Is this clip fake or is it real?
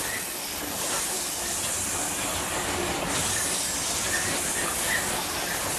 real